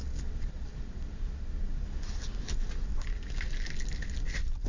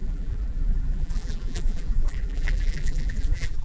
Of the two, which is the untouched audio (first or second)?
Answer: first